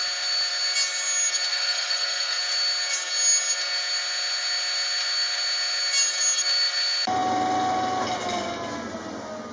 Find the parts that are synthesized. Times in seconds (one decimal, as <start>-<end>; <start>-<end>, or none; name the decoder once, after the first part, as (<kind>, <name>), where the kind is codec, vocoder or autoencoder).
1.5-2.4 (codec, SNAC)

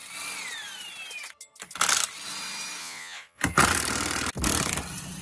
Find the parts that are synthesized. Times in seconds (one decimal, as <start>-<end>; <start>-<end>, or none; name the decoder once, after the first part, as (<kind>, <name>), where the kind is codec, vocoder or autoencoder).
2.8-3.4 (vocoder, Vocos)

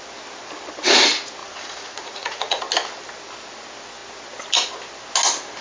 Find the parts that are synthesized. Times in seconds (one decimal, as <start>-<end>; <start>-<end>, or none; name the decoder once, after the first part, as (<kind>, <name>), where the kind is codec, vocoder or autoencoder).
1.4-2.6 (vocoder, Vocos)

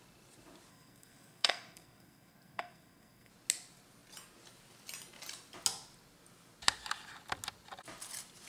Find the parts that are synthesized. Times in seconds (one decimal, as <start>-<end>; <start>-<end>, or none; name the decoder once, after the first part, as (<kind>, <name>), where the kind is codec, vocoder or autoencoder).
0.7-3.3 (codec, SNAC)

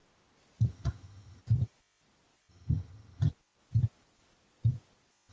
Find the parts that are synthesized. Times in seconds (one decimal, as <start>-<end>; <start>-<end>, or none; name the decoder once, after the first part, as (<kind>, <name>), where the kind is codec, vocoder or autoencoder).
0.7-1.4 (vocoder, HiFi-GAN); 2.5-3.3

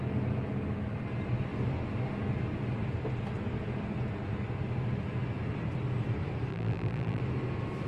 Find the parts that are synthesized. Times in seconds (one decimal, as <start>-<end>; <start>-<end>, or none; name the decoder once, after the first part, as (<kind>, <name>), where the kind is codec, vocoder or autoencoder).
6.5-7.2 (vocoder, BigVGAN v2)

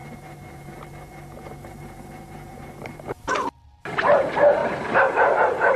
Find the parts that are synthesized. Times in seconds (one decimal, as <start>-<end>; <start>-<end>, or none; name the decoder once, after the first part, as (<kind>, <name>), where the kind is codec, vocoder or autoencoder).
0.0-3.5 (vocoder, BigVGAN v2); 4.6-5.8